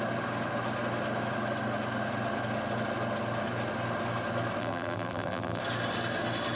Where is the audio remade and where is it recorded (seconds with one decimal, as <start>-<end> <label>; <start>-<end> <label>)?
0.0-4.6 recorded; 4.6-5.6 remade; 5.6-6.6 recorded